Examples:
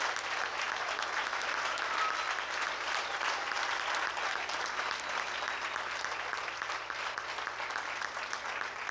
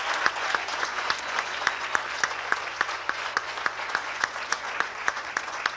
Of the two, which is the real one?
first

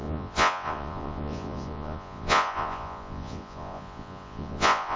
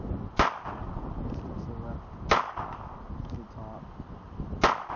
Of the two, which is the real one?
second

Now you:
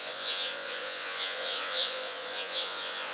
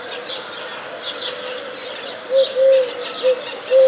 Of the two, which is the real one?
second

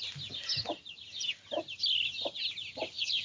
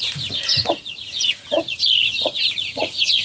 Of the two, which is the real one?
first